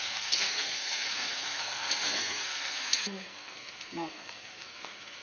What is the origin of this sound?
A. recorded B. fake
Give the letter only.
B